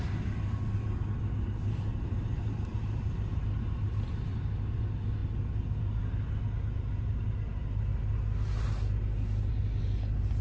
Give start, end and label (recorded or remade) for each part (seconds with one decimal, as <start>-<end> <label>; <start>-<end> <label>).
0.0-1.9 recorded; 1.9-4.5 remade; 4.5-10.4 recorded